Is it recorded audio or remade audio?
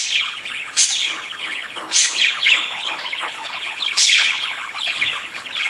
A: remade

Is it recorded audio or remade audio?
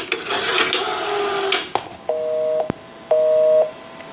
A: recorded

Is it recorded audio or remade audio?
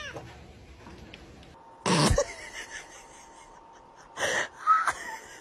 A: recorded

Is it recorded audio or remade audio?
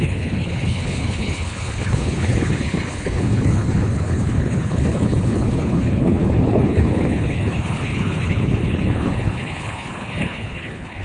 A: remade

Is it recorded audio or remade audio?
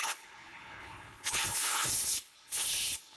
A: remade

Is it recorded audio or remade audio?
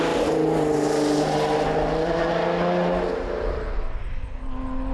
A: recorded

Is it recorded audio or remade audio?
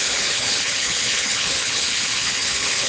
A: remade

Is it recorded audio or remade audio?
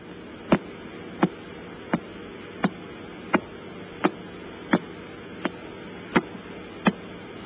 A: recorded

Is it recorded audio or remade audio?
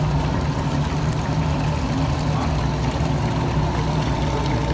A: recorded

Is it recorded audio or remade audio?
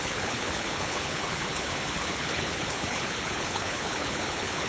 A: remade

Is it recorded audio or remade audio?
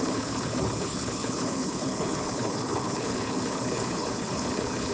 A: remade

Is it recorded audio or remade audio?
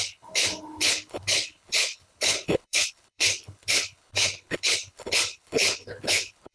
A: remade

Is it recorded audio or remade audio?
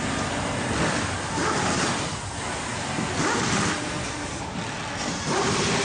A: recorded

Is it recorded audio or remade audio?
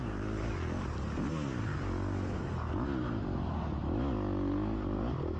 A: recorded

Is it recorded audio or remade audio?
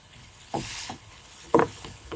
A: remade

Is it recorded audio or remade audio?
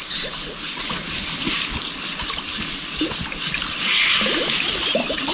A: recorded